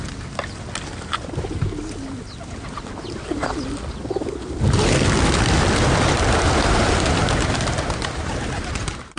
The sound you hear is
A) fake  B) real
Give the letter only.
B